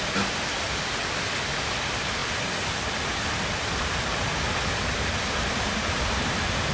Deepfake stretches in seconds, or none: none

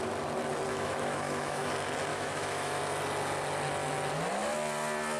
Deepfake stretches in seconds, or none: 0.7-1.7 (autoencoder, DAC-VAE); 2.1-2.8